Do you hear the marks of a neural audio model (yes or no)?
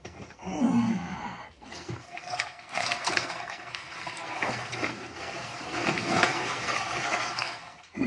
yes